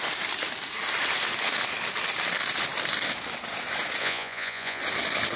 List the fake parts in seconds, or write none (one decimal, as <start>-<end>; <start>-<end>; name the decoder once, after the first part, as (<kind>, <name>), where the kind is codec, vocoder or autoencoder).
4.0-4.8 (vocoder, Vocos)